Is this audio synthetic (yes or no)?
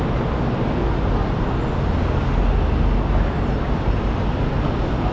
no